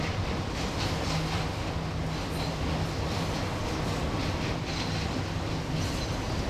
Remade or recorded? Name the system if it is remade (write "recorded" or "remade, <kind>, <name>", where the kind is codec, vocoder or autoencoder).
recorded